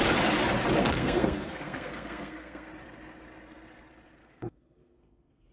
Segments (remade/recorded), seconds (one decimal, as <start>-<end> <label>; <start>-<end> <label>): 0.0-0.8 recorded; 0.8-2.7 remade; 2.7-4.2 recorded; 4.2-5.5 remade